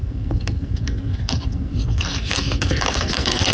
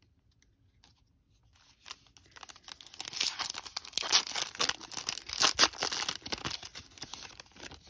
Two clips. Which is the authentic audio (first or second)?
second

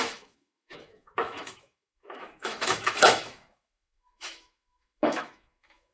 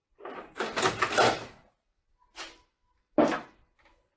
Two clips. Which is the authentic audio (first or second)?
second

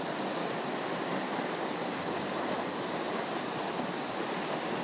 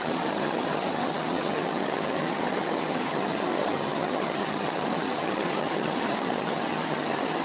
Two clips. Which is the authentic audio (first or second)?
first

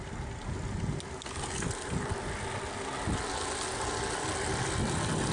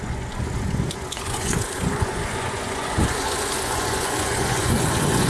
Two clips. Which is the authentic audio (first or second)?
first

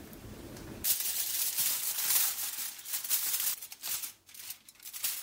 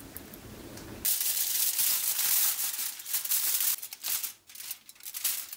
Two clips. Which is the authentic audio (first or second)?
second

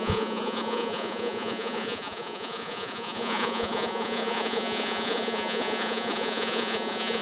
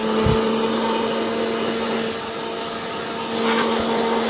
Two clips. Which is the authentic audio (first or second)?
second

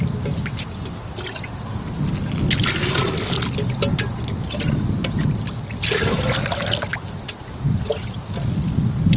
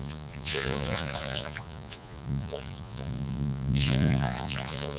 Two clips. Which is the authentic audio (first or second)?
first